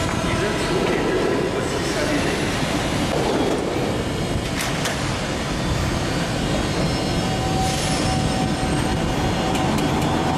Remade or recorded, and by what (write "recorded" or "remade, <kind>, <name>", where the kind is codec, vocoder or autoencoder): recorded